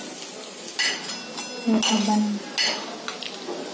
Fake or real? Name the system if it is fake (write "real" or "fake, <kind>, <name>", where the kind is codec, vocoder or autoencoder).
real